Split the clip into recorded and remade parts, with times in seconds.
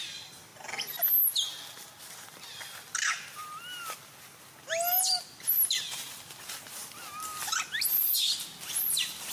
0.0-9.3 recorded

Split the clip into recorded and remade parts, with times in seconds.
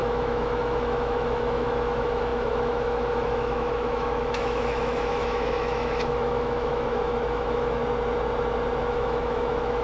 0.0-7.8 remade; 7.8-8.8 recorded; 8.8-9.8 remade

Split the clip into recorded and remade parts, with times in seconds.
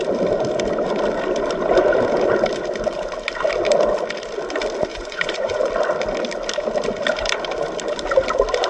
0.0-4.9 recorded; 4.9-5.7 remade; 5.7-8.7 recorded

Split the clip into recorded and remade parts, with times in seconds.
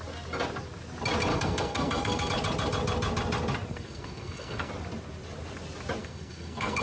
0.0-1.3 recorded; 1.3-2.3 remade; 2.3-3.7 recorded; 3.7-4.7 remade; 4.7-6.0 recorded; 6.0-6.8 remade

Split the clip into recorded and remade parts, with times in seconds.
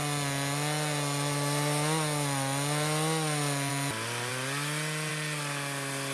0.0-6.1 recorded